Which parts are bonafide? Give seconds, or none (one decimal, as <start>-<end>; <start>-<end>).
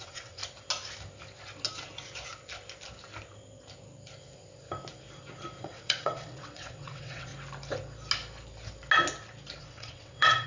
0.4-5.6; 7.3-9.6